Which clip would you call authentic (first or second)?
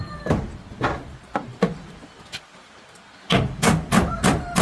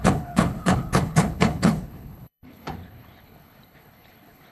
first